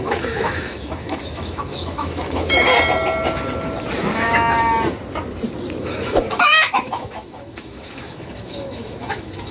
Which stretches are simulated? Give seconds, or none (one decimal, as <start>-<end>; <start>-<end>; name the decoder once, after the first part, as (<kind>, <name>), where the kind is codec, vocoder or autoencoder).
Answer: 0.0-2.7 (autoencoder, DAC-VAE); 5.8-9.5